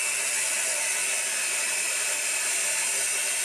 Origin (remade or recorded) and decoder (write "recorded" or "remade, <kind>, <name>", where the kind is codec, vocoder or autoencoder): recorded